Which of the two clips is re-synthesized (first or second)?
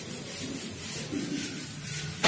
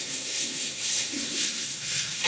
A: second